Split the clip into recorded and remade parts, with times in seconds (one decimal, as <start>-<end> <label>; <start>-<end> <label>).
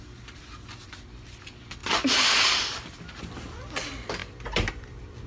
0.0-5.3 recorded